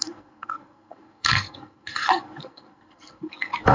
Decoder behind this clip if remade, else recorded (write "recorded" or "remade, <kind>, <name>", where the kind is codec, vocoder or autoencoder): remade, codec, SNAC